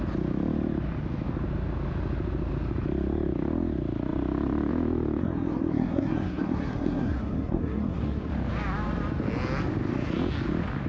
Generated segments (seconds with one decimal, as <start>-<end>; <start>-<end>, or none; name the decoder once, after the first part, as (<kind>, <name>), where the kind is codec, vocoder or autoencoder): 5.2-8.3 (codec, SNAC)

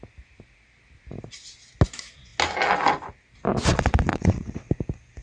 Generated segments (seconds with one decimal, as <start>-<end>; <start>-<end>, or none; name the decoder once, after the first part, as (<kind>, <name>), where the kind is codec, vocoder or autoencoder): 3.7-4.7 (vocoder, WaveNeXt)

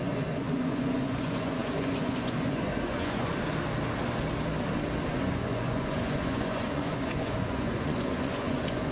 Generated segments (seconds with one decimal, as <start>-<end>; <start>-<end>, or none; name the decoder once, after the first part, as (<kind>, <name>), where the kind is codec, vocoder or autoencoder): 0.0-3.3 (vocoder, Vocos); 5.1-8.9